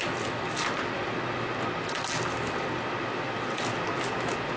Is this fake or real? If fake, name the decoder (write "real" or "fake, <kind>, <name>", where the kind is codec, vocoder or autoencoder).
real